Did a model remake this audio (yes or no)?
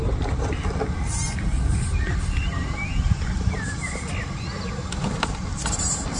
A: no